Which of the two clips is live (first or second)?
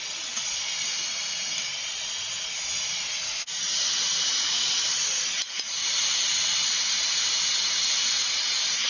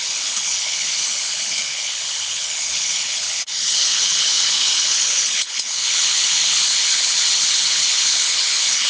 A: first